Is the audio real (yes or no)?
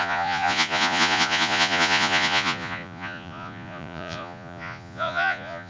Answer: no